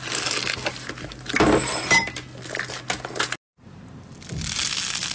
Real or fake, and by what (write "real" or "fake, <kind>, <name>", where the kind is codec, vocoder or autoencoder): real